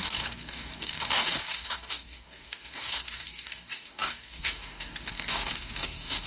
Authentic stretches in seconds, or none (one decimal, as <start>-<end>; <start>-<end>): none